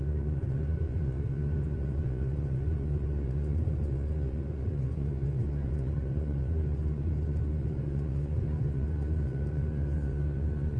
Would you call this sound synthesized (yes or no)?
yes